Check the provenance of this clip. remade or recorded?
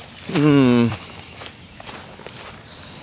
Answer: remade